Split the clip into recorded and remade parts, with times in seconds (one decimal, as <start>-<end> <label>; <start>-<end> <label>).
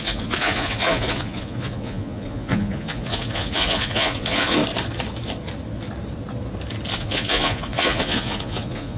0.0-4.6 remade; 4.6-7.0 recorded; 7.0-9.0 remade